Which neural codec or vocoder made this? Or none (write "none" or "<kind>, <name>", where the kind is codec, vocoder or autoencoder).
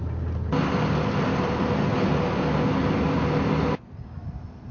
none